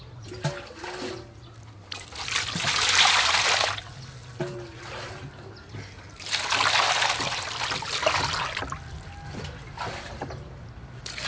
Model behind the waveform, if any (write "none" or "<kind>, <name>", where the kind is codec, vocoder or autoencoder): none